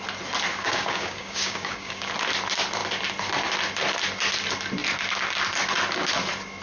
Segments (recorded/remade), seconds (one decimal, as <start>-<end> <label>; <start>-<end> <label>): 0.0-0.5 recorded; 0.5-2.1 remade; 2.1-6.6 recorded